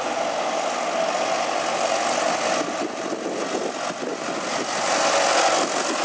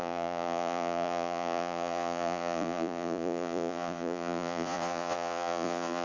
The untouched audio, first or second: first